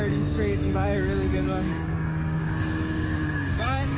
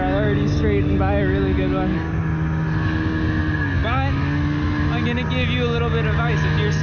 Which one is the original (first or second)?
second